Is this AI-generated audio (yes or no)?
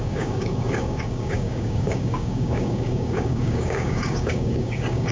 yes